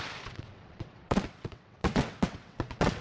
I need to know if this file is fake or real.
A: fake